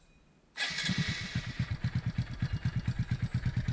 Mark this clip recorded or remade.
recorded